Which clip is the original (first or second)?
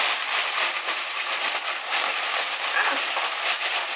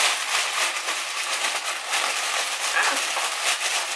second